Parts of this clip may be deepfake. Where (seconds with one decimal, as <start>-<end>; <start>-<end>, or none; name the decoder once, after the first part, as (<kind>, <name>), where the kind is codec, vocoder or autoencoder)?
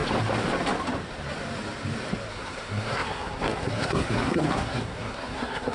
2.3-5.7 (codec, SNAC)